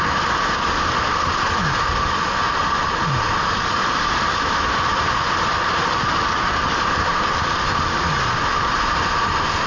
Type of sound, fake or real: real